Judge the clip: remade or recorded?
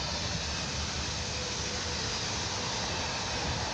recorded